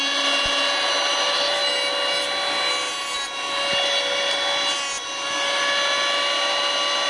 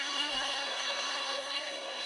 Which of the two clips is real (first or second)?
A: first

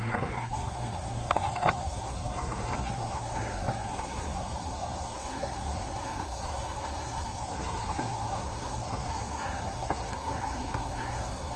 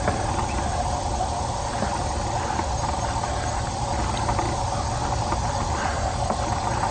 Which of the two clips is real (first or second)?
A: second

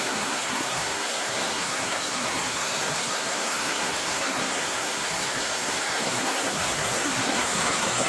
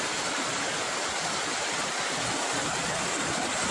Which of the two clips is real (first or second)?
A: second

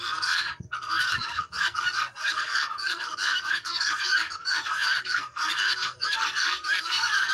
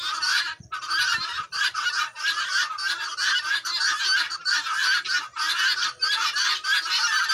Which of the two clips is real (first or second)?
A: second